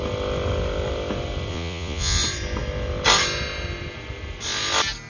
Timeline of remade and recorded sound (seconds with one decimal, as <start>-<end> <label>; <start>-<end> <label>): 0.0-1.5 recorded; 1.5-2.2 remade; 2.2-5.1 recorded

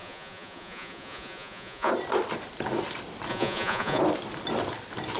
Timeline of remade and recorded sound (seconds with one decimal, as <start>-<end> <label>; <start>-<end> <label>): 0.0-1.9 remade; 1.9-3.3 recorded; 3.3-4.0 remade; 4.0-5.2 recorded

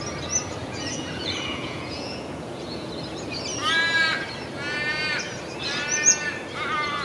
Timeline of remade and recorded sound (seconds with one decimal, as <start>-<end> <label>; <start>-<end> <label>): 0.0-0.6 recorded; 0.6-2.9 remade; 2.9-7.0 recorded